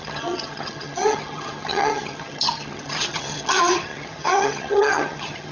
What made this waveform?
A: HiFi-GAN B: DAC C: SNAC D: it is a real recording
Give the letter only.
A